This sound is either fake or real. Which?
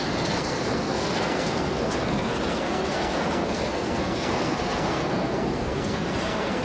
fake